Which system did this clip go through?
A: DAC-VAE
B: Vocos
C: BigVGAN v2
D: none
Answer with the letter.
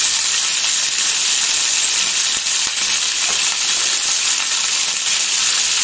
D